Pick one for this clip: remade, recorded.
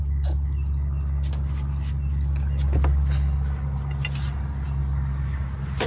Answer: recorded